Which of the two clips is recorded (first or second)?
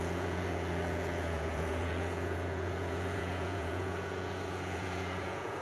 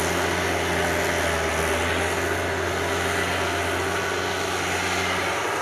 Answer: second